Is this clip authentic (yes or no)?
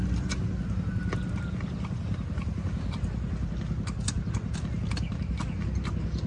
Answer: yes